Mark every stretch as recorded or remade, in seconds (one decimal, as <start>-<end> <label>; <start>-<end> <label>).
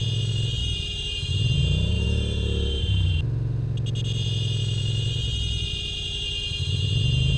0.0-0.6 recorded; 0.6-3.1 remade; 3.1-7.4 recorded